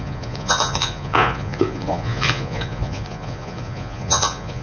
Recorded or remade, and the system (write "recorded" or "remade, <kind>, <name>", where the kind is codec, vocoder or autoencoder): remade, vocoder, Vocos